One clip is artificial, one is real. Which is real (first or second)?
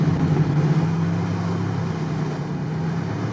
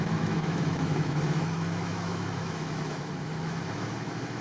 first